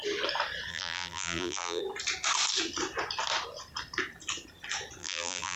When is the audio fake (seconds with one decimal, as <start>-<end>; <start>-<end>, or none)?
0.7-1.8; 5.0-5.6